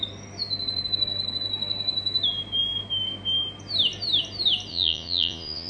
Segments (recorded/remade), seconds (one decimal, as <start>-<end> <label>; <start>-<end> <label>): 0.0-4.7 recorded; 4.7-5.7 remade